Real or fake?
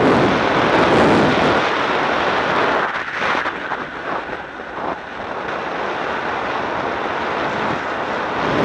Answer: real